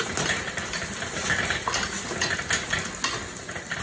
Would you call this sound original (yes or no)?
yes